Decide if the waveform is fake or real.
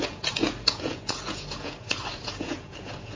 fake